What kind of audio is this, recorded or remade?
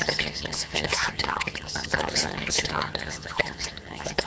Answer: remade